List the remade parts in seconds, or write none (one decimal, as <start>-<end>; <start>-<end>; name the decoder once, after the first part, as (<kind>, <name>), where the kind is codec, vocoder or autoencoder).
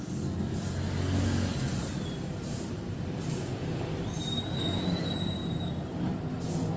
1.5-4.6 (vocoder, BigVGAN v2); 5.4-6.1